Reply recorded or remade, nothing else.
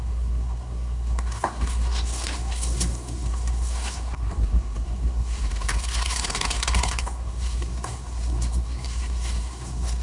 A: remade